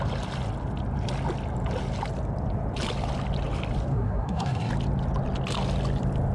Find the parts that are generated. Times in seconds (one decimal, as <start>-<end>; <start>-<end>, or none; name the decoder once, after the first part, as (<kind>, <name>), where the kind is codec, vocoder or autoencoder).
3.9-4.7 (codec, SNAC)